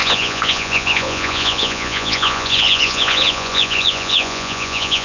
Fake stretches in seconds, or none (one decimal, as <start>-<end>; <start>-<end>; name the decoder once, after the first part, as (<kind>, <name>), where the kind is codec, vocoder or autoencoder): 0.0-5.0 (vocoder, Vocos)